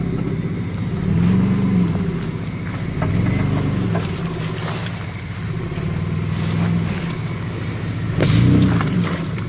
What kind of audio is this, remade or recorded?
recorded